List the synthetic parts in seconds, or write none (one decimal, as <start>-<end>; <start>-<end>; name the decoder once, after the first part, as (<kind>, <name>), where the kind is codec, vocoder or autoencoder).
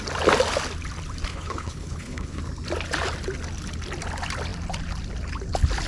1.3-2.4 (codec, HILCodec)